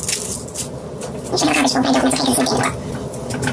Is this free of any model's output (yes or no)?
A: yes